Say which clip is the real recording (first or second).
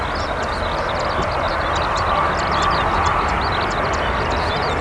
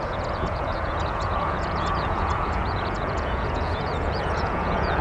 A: first